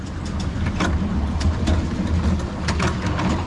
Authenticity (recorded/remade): recorded